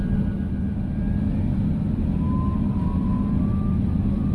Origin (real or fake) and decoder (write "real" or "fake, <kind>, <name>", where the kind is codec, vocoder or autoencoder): real